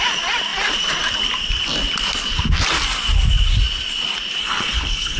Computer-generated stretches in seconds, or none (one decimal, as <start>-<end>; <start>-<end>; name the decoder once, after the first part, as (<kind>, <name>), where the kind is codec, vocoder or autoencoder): 4.4-5.2 (codec, HILCodec)